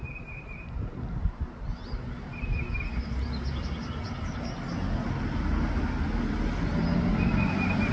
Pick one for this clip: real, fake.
real